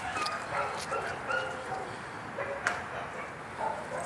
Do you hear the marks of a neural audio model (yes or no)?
no